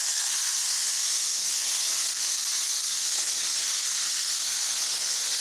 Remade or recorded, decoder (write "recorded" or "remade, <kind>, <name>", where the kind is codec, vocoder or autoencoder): remade, codec, SNAC